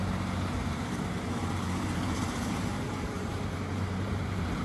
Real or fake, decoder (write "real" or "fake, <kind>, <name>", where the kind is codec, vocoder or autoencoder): fake, vocoder, BigVGAN v2